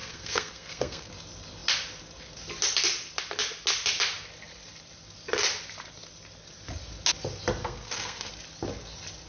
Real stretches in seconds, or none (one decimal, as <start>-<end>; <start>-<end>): 1.1-7.6; 8.3-9.3